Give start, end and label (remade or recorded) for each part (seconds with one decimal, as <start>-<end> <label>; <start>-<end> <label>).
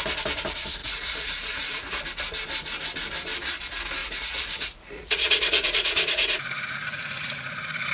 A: 0.0-0.8 recorded; 0.8-2.0 remade; 2.0-4.0 recorded; 4.0-7.9 remade